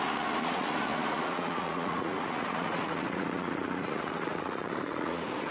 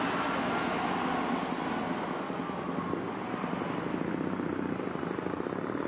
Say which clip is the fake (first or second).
first